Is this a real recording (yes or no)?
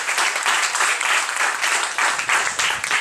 yes